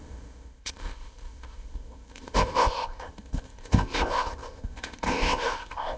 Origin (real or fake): fake